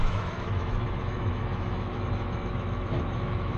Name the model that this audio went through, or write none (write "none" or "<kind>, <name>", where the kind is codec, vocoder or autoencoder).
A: autoencoder, DAC-VAE